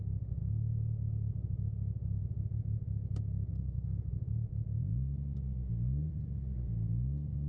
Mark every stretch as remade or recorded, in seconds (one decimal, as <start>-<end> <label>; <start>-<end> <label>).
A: 0.0-3.5 recorded; 3.5-4.1 remade; 4.1-7.5 recorded